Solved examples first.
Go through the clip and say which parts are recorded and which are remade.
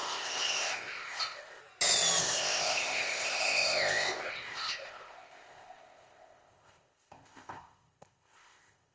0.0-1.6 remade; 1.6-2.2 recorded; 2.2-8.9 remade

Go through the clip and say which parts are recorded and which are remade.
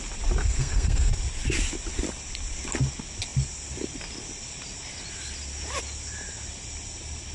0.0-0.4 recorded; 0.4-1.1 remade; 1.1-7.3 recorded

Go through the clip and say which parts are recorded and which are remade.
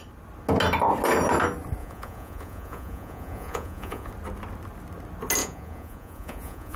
0.0-1.8 recorded; 1.8-4.1 remade; 4.1-5.4 recorded; 5.4-6.8 remade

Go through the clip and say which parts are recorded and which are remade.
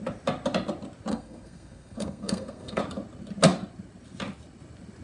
0.0-1.1 recorded; 1.1-2.8 remade; 2.8-5.0 recorded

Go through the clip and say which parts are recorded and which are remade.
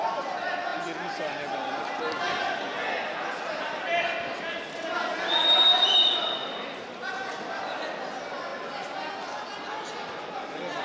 0.0-10.8 recorded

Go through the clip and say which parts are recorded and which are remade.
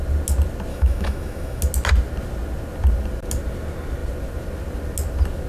0.0-0.7 recorded; 0.7-1.6 remade; 1.6-5.5 recorded